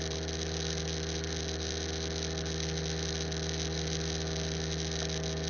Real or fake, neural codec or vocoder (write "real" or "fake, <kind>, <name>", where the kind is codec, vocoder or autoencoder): real